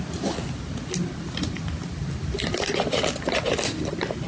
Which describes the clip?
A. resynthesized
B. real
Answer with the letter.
B